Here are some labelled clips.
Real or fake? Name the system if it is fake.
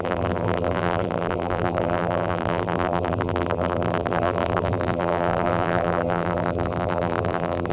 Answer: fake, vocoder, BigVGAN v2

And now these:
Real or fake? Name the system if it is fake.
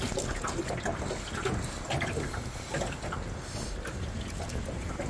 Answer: real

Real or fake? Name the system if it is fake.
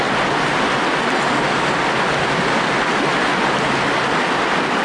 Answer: real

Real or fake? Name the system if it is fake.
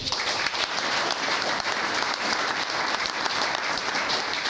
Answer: fake, vocoder, BigVGAN v2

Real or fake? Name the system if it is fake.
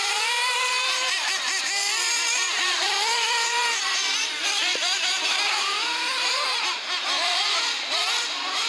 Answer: fake, vocoder, BigVGAN v2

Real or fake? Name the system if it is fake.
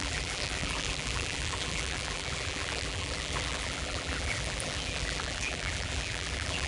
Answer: fake, vocoder, BigVGAN v2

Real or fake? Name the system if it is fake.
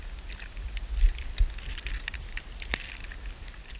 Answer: fake, vocoder, BigVGAN v2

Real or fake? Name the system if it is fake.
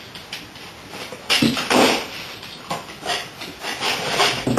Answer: real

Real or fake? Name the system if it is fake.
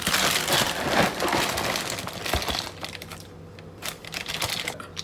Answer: real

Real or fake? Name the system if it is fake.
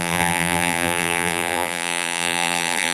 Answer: fake, vocoder, BigVGAN v2